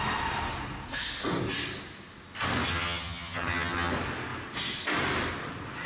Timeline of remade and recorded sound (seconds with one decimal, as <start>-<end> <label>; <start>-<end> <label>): 0.0-2.7 recorded; 2.7-3.9 remade; 3.9-5.9 recorded